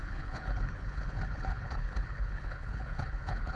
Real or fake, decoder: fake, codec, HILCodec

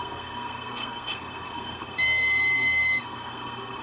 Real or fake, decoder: fake, codec, SNAC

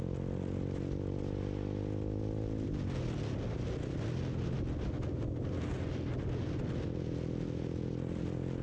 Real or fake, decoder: real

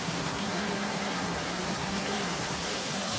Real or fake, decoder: fake, codec, SNAC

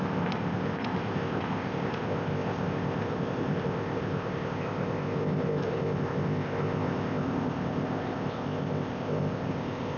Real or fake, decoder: fake, codec, ZipCodec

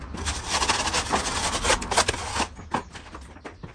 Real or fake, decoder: real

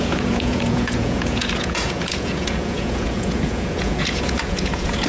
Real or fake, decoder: fake, vocoder, Vocos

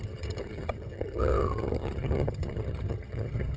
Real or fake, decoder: fake, vocoder, HiFi-GAN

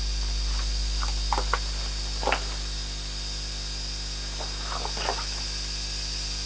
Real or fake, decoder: real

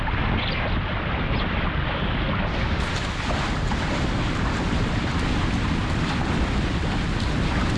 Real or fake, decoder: real